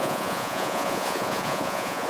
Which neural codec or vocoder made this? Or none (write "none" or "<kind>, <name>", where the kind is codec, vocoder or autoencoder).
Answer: vocoder, Vocos